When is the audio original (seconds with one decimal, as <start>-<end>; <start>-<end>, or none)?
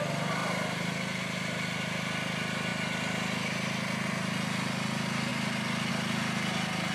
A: 0.0-0.4; 0.9-6.9